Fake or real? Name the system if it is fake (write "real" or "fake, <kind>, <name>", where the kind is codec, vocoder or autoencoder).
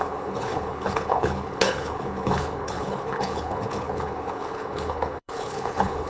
fake, codec, HILCodec